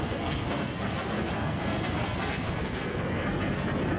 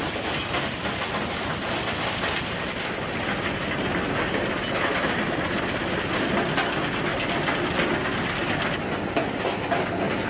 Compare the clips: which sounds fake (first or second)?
first